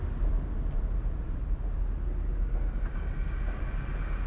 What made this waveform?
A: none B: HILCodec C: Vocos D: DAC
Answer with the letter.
A